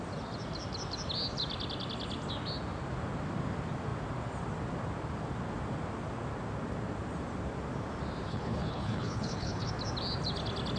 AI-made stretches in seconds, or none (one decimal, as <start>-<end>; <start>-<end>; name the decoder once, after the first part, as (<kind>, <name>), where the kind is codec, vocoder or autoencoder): 8.3-9.7 (codec, HILCodec)